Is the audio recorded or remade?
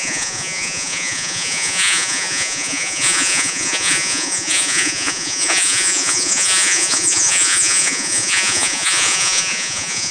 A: remade